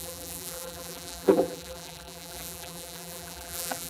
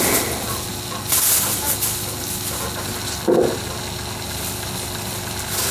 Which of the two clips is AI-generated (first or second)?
first